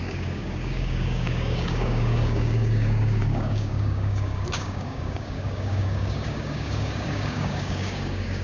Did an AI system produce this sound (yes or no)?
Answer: yes